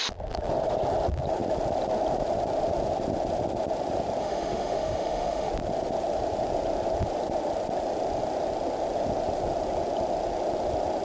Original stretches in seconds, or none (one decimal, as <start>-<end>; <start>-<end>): 0.0-4.2; 5.5-11.0